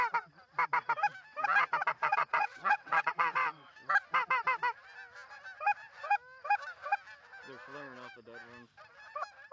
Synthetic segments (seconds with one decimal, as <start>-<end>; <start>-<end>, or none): 2.0-3.7